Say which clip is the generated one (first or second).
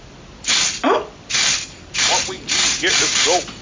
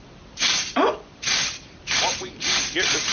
second